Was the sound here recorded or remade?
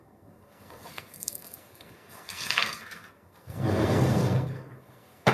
remade